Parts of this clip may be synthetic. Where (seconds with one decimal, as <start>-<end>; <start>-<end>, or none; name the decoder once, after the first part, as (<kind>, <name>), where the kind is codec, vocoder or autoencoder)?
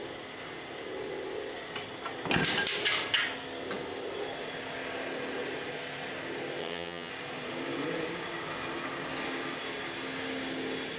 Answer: 6.6-7.1 (vocoder, HiFi-GAN)